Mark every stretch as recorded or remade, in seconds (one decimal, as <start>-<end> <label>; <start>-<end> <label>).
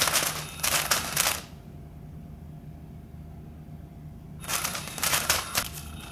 0.0-4.5 recorded; 4.5-5.6 remade; 5.6-6.1 recorded